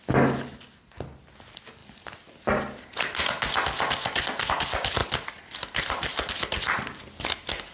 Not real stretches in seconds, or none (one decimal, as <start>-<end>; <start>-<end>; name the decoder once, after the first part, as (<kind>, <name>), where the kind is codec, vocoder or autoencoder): none